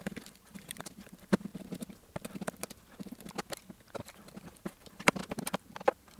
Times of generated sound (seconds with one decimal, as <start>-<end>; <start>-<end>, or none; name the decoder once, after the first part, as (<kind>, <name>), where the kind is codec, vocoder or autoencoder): 0.0-1.5 (vocoder, BigVGAN v2); 4.6-5.2